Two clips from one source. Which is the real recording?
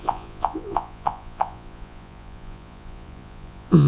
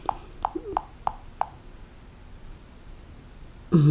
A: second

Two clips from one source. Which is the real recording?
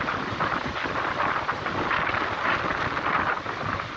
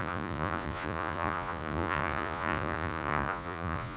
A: first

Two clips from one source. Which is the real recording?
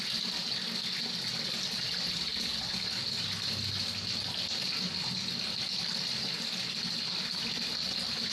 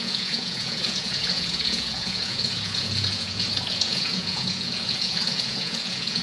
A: first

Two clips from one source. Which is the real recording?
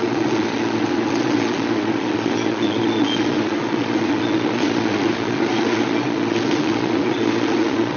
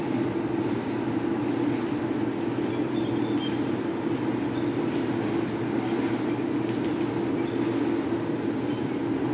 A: second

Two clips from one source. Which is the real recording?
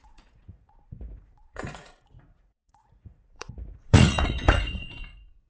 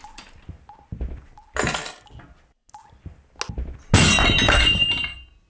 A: second